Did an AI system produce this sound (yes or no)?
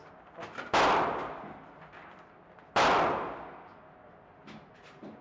no